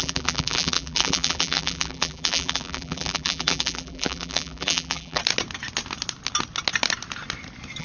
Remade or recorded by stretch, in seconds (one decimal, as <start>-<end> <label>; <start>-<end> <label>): 0.0-5.2 remade; 5.2-7.8 recorded